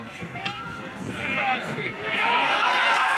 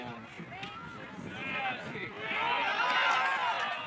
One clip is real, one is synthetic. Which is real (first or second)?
second